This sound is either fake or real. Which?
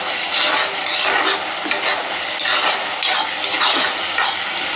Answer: real